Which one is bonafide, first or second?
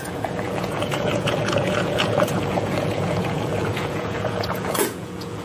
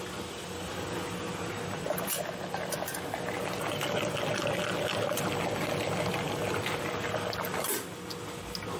second